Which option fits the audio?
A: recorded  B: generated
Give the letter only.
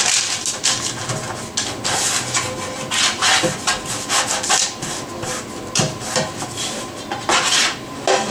A